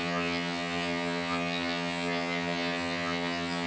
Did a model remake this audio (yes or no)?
yes